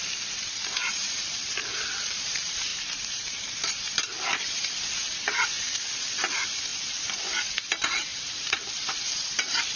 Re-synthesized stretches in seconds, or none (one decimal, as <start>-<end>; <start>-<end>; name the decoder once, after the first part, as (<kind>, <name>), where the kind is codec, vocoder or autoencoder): 0.0-9.8 (vocoder, BigVGAN v2)